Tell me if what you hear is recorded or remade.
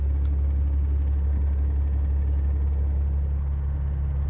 recorded